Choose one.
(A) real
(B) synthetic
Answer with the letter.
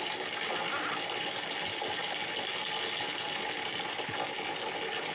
A